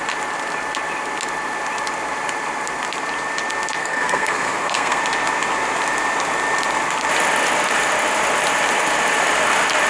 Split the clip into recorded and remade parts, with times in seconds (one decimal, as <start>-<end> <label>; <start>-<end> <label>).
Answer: 0.0-3.8 recorded; 3.8-5.0 remade; 5.0-9.9 recorded